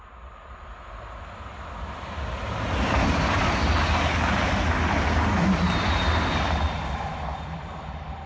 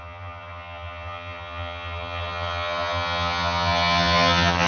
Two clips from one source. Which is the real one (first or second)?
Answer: first